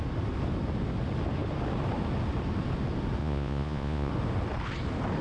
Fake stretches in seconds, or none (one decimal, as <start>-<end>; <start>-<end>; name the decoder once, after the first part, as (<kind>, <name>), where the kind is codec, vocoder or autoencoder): 3.2-4.1 (vocoder, Vocos)